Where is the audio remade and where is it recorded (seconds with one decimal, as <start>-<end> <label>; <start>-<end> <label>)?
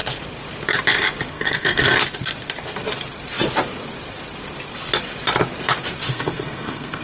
0.0-1.3 recorded; 1.3-1.9 remade; 1.9-6.1 recorded; 6.1-7.0 remade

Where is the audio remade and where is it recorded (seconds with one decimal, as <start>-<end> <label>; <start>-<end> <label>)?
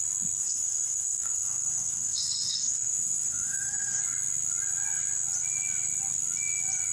0.0-0.4 recorded; 0.4-4.0 remade; 4.0-6.9 recorded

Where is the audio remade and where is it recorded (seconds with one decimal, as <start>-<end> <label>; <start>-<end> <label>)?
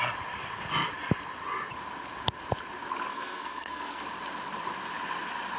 0.0-3.1 recorded; 3.1-4.0 remade; 4.0-5.6 recorded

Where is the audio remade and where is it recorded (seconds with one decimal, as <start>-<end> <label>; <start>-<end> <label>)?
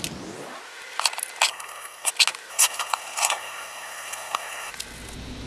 0.0-1.5 recorded; 1.5-2.1 remade; 2.1-2.5 recorded; 2.5-4.7 remade; 4.7-5.5 recorded